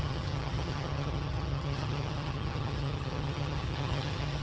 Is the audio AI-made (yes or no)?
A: yes